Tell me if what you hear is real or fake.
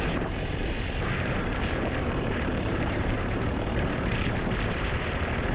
fake